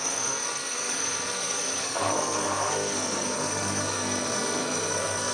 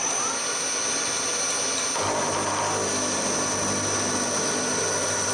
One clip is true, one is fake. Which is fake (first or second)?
first